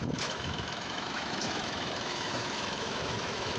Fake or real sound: fake